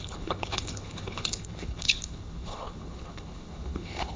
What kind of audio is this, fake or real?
fake